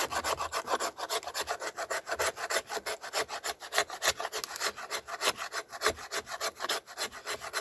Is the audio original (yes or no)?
yes